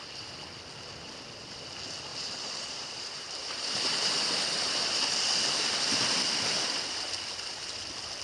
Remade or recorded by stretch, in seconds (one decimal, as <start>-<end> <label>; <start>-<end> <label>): 0.0-2.1 recorded; 2.1-4.7 remade; 4.7-8.2 recorded